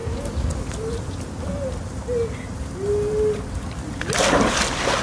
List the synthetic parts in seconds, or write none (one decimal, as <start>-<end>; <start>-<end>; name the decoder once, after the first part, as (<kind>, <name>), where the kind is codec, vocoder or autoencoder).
none